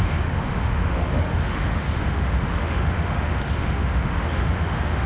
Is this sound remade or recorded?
remade